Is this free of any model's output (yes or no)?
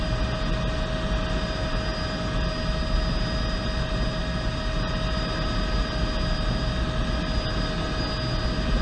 yes